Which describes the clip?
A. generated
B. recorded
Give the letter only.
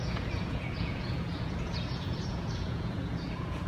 A